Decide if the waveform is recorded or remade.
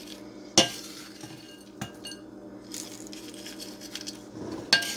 recorded